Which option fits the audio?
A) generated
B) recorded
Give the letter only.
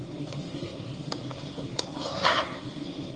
A